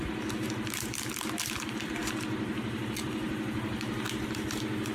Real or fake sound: real